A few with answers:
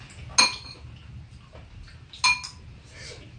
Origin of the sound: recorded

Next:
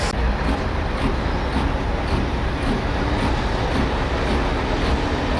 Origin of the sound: recorded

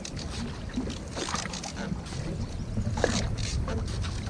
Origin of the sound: recorded